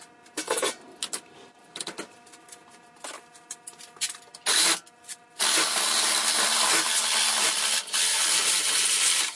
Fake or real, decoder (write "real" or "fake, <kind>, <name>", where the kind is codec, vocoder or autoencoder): real